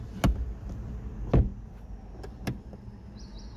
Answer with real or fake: real